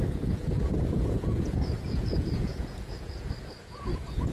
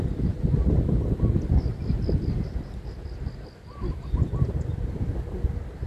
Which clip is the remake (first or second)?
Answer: first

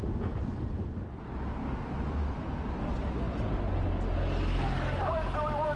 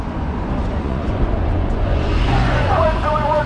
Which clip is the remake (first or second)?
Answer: second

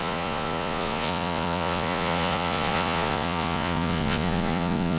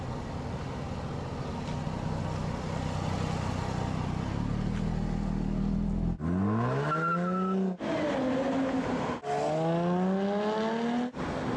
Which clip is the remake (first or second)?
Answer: first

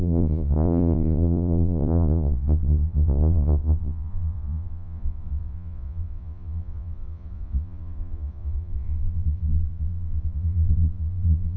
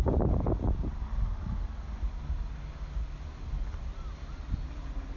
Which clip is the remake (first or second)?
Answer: first